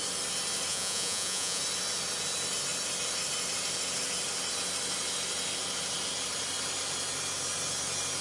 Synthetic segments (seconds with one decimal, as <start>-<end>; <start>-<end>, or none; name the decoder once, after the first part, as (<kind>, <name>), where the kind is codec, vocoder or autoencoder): 0.7-1.6 (vocoder, Vocos)